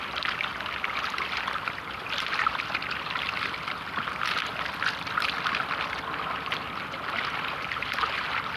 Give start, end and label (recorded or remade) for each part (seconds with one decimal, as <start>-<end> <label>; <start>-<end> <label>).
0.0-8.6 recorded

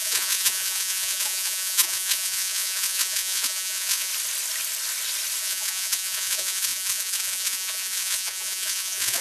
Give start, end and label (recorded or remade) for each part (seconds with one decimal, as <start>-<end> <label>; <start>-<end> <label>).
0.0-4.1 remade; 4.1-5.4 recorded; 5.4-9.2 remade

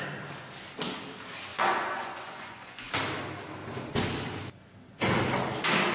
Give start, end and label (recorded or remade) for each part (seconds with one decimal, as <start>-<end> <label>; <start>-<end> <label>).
0.0-1.5 recorded; 1.5-2.9 remade; 2.9-5.9 recorded

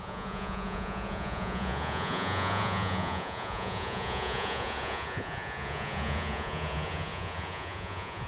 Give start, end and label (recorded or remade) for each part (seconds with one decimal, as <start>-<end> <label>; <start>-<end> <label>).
0.0-8.3 remade

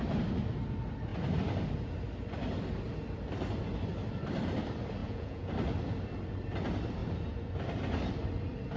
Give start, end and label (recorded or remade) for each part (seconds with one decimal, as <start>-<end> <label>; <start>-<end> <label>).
0.0-5.0 recorded; 5.0-5.5 remade; 5.5-8.8 recorded